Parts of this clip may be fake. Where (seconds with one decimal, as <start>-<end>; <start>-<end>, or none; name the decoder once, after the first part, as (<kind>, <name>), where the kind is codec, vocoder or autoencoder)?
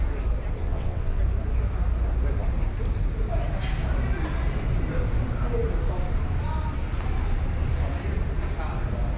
0.6-1.2 (vocoder, WaveNeXt)